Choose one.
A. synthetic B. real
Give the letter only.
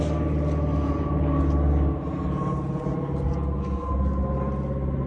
B